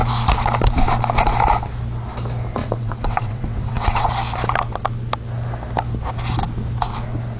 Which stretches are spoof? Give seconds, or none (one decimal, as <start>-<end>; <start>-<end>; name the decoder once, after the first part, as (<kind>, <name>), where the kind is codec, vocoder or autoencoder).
2.6-4.1 (vocoder, WaveNeXt)